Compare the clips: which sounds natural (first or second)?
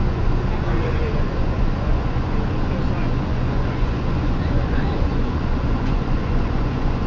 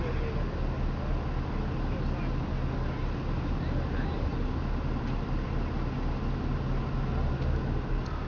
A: second